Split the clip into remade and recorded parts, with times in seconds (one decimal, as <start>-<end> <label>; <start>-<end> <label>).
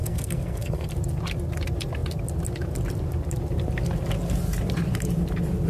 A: 0.0-0.9 remade; 0.9-5.7 recorded